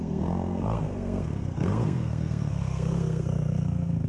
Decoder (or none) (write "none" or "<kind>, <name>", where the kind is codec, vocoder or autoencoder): codec, SNAC